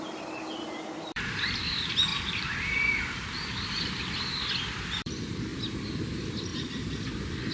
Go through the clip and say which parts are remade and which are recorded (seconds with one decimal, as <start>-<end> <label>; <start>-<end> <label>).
0.0-7.5 remade